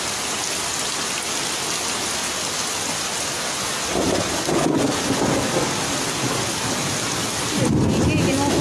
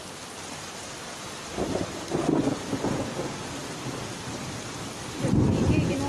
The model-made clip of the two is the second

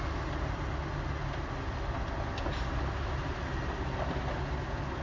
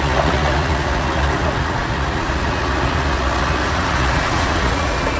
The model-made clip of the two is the second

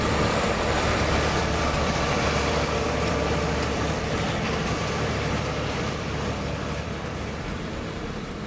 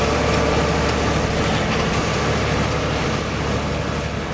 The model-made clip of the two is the first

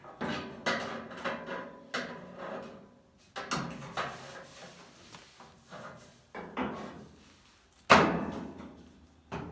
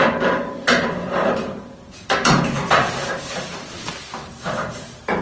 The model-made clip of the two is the second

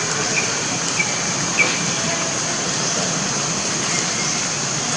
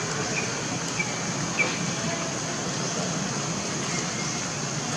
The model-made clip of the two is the first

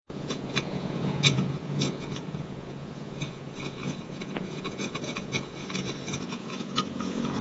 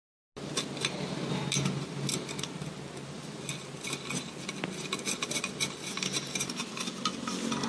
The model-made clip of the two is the first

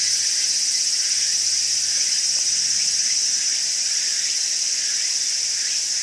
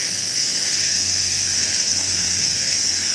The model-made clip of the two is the second